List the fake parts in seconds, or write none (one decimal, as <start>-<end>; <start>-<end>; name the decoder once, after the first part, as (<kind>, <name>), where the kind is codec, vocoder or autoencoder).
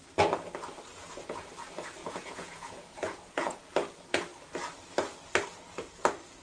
0.9-1.5 (vocoder, Vocos); 2.0-3.6